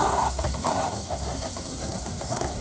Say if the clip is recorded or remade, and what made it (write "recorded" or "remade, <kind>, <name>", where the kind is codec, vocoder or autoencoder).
remade, codec, SNAC